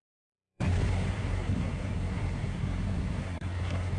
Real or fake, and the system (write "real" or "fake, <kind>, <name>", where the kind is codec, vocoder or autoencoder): fake, codec, SNAC